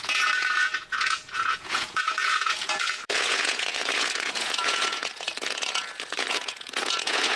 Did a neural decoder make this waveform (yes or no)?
yes